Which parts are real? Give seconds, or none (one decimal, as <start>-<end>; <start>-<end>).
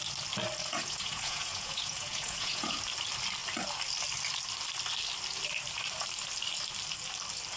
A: 0.0-0.6; 2.8-7.6